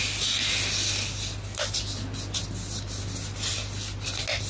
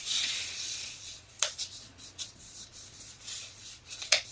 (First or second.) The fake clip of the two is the second